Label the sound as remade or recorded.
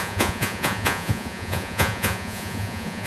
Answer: remade